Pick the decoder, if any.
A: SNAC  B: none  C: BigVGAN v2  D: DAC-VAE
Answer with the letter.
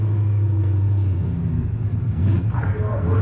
A